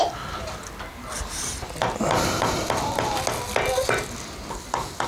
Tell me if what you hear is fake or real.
real